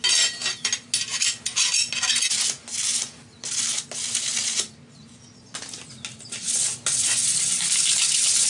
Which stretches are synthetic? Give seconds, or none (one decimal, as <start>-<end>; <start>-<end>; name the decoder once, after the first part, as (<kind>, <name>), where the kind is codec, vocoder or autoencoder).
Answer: none